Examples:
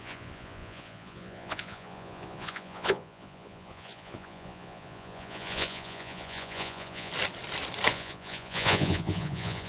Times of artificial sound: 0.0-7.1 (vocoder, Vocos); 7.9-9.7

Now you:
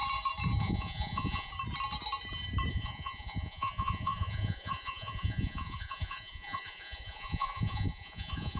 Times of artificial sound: 0.6-1.5 (vocoder, Vocos); 2.7-8.6

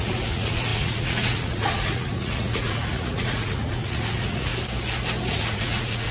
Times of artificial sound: 0.0-4.5 (vocoder, Vocos); 5.3-6.1

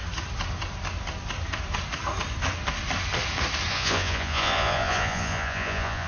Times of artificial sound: 3.7-6.1 (vocoder, Vocos)

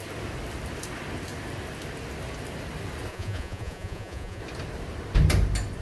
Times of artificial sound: 3.1-4.4 (vocoder, Vocos)